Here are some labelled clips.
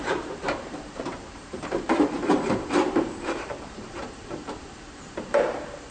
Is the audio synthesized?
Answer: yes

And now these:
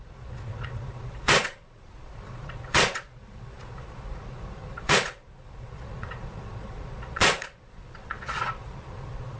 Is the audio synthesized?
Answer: yes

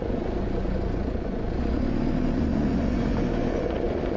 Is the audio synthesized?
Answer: yes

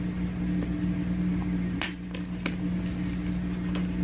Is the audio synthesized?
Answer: no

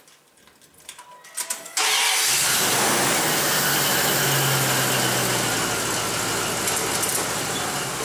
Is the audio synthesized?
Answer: no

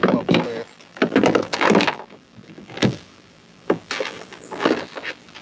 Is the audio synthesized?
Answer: yes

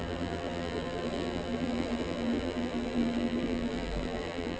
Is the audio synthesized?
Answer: yes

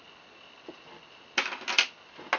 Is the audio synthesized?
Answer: no